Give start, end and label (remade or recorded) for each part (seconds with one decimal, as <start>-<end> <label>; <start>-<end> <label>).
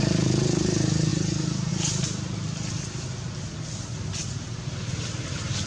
0.0-5.7 recorded